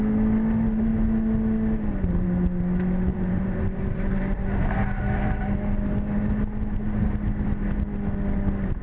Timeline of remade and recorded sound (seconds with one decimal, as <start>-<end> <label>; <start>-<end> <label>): 0.0-3.1 recorded; 3.1-4.8 remade; 4.8-8.8 recorded